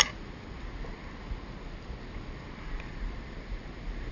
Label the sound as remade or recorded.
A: recorded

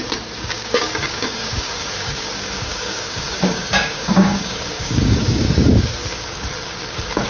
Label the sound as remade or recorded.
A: remade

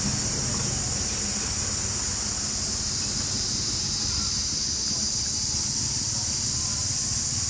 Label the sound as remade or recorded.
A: recorded